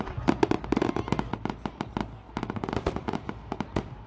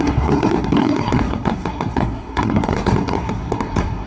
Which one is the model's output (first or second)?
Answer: second